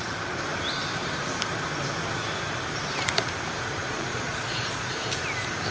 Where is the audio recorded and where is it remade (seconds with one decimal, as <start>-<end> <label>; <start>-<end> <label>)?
0.0-3.8 recorded; 3.8-5.1 remade; 5.1-5.7 recorded